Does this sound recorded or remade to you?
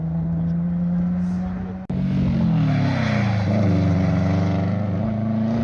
recorded